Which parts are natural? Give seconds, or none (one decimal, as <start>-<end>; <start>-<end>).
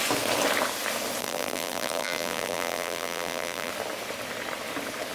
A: 0.0-1.2; 3.7-5.1